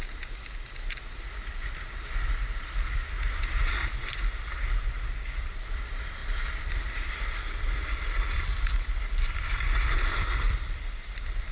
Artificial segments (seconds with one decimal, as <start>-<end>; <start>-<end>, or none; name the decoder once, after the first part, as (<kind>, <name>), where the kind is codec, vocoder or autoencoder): 6.2-11.1 (vocoder, BigVGAN v2)